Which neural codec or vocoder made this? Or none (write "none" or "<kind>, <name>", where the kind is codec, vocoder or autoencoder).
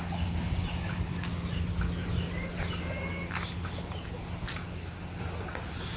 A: none